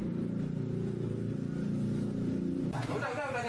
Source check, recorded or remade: recorded